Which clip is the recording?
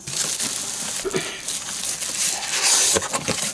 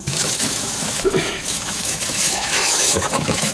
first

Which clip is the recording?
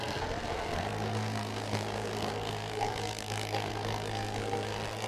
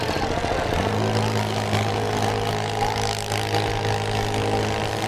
second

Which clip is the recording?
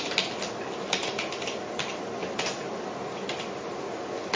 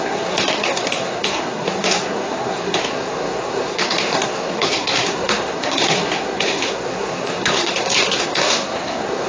first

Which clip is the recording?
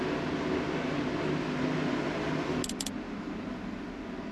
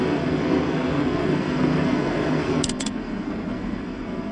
first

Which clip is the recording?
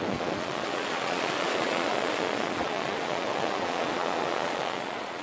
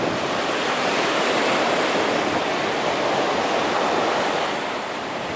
second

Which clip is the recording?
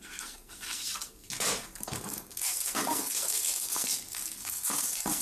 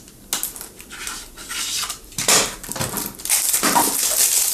second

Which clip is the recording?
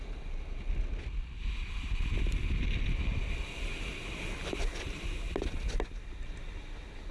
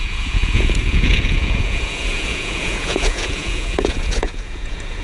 first